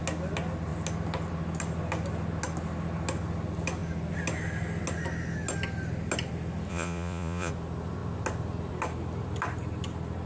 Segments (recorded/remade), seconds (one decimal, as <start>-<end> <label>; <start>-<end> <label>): 0.0-6.7 recorded; 6.7-7.5 remade; 7.5-10.3 recorded